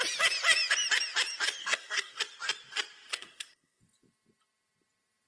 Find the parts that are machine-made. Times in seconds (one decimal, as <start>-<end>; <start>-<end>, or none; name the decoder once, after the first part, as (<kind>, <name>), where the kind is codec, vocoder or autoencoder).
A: 1.6-2.2 (codec, SNAC); 3.1-3.8

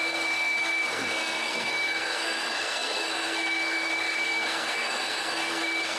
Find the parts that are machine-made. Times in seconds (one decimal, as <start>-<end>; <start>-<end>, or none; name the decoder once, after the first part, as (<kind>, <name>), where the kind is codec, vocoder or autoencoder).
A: 0.0-6.0 (codec, SNAC)

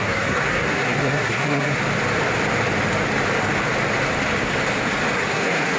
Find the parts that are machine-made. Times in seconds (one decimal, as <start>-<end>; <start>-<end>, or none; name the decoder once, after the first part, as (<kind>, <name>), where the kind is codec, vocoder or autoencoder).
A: 0.0-1.8 (codec, SNAC); 5.3-5.8